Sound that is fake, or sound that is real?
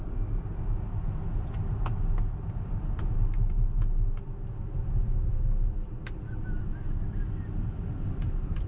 real